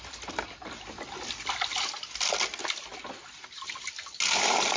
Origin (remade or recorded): recorded